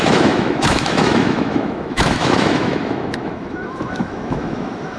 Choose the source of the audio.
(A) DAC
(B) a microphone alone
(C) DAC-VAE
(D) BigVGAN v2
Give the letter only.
C